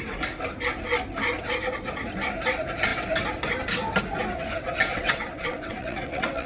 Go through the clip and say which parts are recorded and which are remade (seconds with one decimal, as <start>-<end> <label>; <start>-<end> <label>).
0.0-4.9 recorded; 4.9-6.5 remade